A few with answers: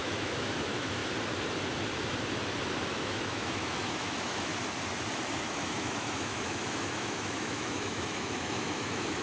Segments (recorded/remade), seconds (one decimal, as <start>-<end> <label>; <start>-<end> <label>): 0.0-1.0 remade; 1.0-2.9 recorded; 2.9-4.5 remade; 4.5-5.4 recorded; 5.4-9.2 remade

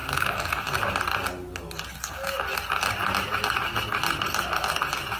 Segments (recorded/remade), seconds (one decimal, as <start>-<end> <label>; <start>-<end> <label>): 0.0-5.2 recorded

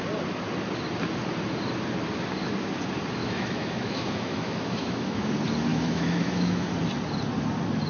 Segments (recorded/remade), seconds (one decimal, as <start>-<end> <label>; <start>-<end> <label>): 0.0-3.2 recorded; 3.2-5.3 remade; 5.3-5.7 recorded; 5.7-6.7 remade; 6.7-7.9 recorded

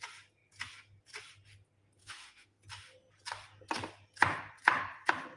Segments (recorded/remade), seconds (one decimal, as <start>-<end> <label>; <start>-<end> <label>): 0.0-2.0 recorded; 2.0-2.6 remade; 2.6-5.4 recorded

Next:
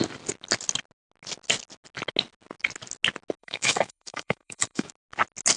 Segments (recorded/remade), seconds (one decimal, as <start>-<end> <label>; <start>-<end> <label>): 0.0-3.4 recorded; 3.4-4.9 remade; 4.9-5.6 recorded

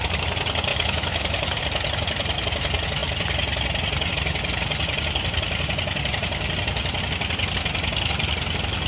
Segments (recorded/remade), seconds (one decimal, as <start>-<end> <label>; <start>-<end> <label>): 0.0-0.7 recorded; 0.7-1.6 remade; 1.6-8.9 recorded

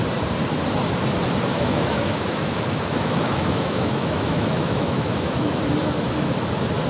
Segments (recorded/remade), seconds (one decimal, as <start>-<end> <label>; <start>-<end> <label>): 0.0-1.5 recorded; 1.5-5.6 remade; 5.6-6.9 recorded